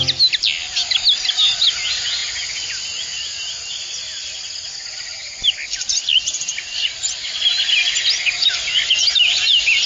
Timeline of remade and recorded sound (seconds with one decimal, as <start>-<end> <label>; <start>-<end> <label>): 0.0-9.9 recorded